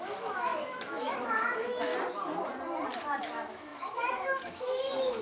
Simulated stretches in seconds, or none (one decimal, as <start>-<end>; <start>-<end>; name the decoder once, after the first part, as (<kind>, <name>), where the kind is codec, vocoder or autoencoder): 0.0-1.9 (autoencoder, DAC-VAE); 3.2-5.2